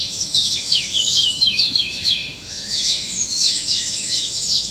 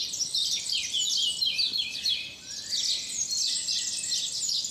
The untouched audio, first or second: second